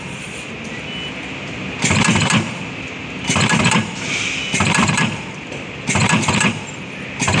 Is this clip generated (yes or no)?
no